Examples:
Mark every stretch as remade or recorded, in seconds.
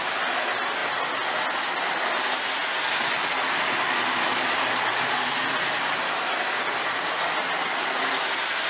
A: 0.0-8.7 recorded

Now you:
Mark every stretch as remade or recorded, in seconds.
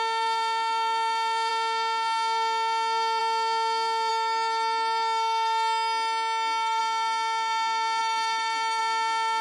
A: 0.0-4.1 recorded; 4.1-6.8 remade; 6.8-8.0 recorded; 8.0-8.8 remade; 8.8-9.4 recorded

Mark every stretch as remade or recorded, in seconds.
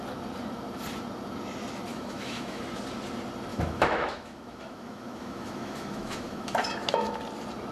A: 0.0-1.9 recorded; 1.9-2.6 remade; 2.6-3.5 recorded; 3.5-7.2 remade; 7.2-7.7 recorded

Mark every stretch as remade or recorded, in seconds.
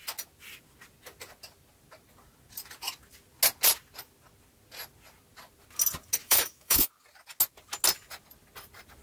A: 0.0-6.2 recorded; 6.2-6.9 remade; 6.9-9.0 recorded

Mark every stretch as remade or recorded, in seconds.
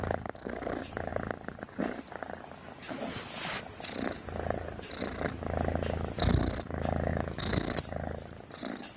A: 0.0-7.1 recorded; 7.1-7.8 remade; 7.8-9.0 recorded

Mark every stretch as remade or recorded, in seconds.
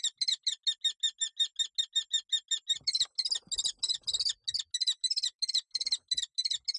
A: 0.0-6.8 recorded